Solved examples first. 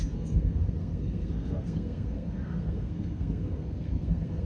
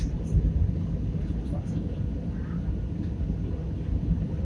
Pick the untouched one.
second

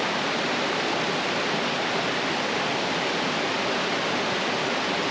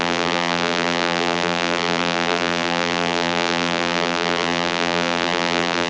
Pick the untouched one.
first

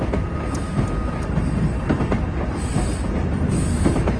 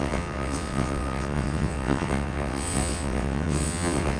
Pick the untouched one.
first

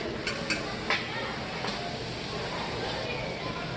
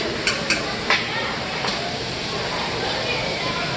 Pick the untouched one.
first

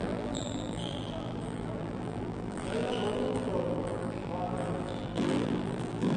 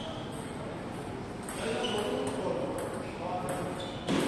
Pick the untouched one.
second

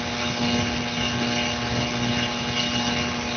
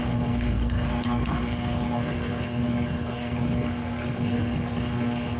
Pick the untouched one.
first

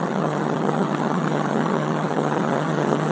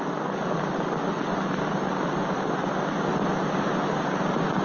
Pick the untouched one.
second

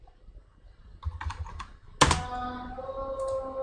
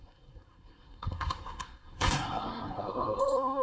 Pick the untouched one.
first